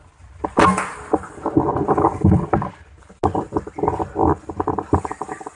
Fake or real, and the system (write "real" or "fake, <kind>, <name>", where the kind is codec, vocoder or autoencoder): real